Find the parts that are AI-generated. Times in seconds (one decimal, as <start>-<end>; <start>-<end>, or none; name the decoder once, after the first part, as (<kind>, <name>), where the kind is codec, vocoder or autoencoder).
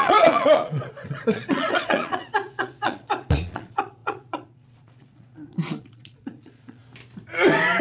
0.0-6.8 (vocoder, Vocos)